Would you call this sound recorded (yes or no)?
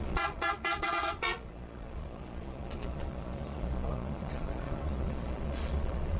no